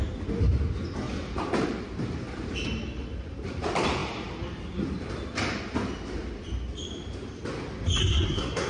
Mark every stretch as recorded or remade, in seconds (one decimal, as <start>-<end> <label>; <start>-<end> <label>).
0.0-8.0 recorded; 8.0-8.7 remade